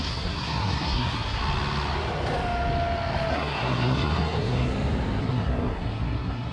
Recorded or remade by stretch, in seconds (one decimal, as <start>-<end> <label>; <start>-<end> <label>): 0.0-1.4 remade; 1.4-3.3 recorded; 3.3-4.7 remade; 4.7-5.2 recorded; 5.2-6.5 remade